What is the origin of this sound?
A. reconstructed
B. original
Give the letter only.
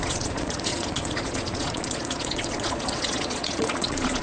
A